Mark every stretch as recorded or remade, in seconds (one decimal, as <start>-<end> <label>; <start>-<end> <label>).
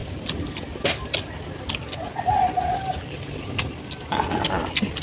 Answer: 0.0-5.0 recorded